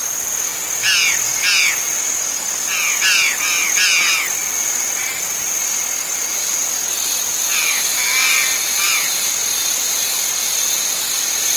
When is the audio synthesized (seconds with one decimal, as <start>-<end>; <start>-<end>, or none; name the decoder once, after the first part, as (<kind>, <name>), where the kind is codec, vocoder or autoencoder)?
none

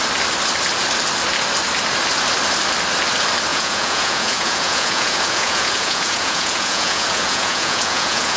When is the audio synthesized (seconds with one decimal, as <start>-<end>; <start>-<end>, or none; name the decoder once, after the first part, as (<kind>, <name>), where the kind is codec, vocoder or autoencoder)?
3.5-8.4 (vocoder, Vocos)

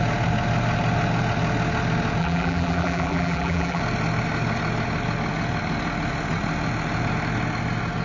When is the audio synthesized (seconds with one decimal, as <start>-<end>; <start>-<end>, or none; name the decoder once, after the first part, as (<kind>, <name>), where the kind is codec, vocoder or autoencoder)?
2.2-3.8 (vocoder, BigVGAN v2)

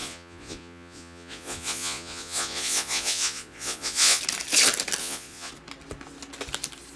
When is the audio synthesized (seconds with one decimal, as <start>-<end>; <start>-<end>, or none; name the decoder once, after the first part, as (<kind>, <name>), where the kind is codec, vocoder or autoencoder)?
0.0-4.2 (vocoder, Vocos); 5.0-5.5